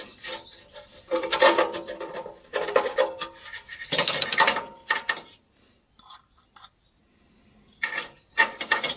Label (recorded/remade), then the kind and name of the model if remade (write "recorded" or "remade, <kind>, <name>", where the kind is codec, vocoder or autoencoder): remade, vocoder, BigVGAN v2